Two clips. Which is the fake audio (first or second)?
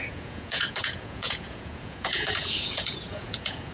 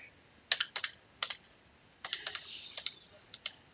first